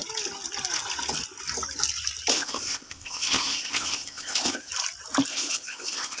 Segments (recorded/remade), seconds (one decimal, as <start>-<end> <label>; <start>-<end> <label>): 0.0-2.3 recorded; 2.3-4.7 remade; 4.7-5.3 recorded; 5.3-6.2 remade